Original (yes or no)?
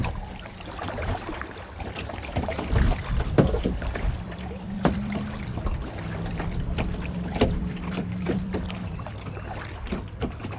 no